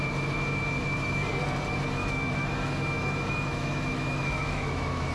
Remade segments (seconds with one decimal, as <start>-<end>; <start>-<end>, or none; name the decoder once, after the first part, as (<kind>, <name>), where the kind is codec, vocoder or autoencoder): 2.0-5.1 (autoencoder, DAC-VAE)